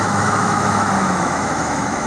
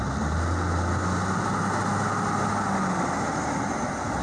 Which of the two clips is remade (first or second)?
first